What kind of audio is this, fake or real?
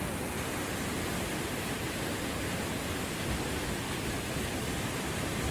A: real